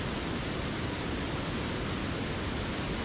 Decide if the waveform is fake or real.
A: real